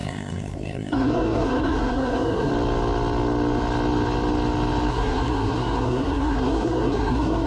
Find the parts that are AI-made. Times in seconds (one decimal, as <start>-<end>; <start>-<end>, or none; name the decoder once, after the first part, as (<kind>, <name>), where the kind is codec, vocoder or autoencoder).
0.0-2.5 (codec, SNAC); 4.9-7.5